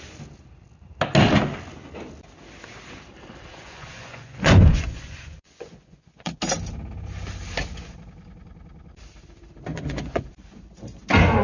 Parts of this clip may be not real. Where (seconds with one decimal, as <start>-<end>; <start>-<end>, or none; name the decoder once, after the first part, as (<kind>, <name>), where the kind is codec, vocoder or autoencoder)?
3.5-6.4 (vocoder, Vocos); 9.7-10.3